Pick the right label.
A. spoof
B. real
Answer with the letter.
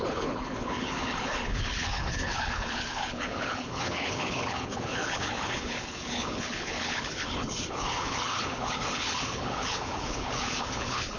A